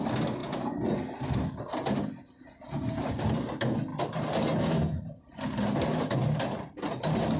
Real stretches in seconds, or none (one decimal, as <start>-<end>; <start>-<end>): 0.0-7.4